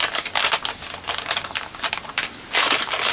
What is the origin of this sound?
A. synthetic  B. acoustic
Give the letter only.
B